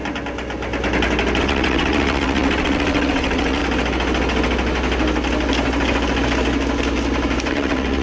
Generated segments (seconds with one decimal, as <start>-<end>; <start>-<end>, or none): 1.4-3.6; 7.5-8.0